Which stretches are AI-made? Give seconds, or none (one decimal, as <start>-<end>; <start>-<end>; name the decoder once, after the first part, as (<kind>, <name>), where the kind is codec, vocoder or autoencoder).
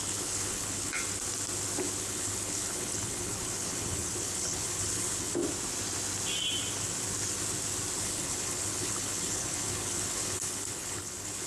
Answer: 0.0-1.0 (codec, HILCodec); 2.0-5.4; 8.0-11.5